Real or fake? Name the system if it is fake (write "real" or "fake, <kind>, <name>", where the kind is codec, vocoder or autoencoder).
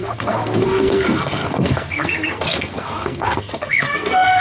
fake, codec, SNAC